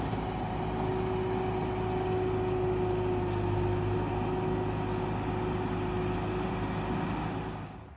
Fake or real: real